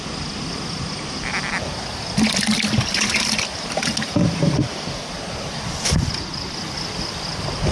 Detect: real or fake real